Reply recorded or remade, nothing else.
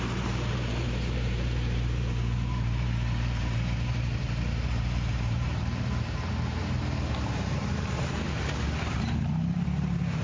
remade